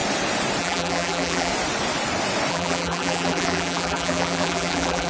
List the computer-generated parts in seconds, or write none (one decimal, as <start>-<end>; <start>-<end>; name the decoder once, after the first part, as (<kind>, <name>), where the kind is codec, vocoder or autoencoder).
0.6-1.5 (vocoder, BigVGAN v2); 2.5-5.1